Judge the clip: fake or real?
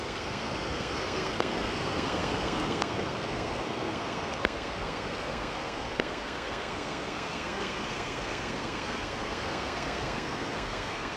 fake